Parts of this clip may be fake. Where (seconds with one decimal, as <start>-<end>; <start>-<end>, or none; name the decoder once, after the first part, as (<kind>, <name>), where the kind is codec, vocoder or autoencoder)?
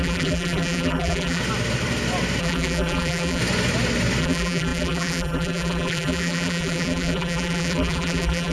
0.0-1.4 (vocoder, BigVGAN v2); 2.4-3.4; 4.2-8.5